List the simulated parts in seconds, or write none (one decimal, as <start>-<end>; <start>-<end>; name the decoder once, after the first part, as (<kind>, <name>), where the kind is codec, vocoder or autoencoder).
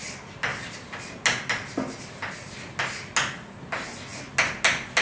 none